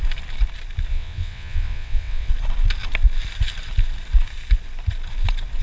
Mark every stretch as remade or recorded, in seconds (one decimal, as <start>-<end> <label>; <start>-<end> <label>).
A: 0.0-0.9 recorded; 0.9-2.3 remade; 2.3-5.6 recorded